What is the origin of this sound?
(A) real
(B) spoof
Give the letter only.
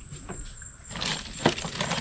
A